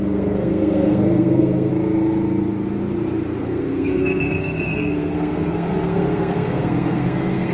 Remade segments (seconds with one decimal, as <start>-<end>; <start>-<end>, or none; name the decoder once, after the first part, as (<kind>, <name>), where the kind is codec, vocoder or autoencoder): 0.0-1.7 (codec, SNAC); 3.4-7.5